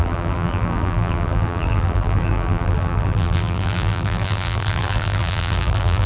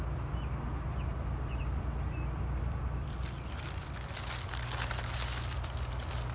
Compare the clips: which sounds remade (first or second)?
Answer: first